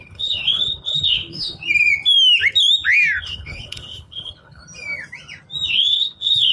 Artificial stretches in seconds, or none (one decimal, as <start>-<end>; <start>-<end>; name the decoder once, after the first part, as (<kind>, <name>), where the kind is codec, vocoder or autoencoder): 0.0-1.6 (codec, HILCodec); 3.2-4.6; 5.7-6.5